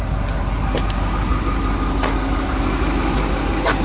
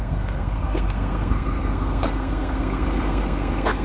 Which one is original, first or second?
first